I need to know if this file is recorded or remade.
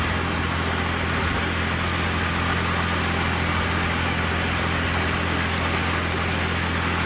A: recorded